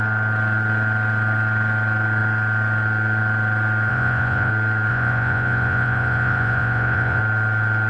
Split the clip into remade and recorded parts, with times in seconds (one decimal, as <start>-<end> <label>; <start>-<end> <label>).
0.0-3.9 recorded; 3.9-4.5 remade; 4.5-4.9 recorded; 4.9-7.2 remade; 7.2-7.9 recorded